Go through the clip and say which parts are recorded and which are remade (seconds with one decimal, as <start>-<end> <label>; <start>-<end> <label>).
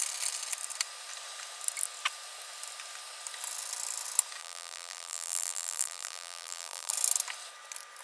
0.0-4.4 recorded; 4.4-6.9 remade; 6.9-8.0 recorded